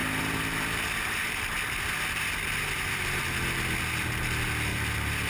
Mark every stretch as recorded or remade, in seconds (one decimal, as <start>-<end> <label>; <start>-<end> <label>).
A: 0.0-3.2 remade; 3.2-4.7 recorded; 4.7-5.3 remade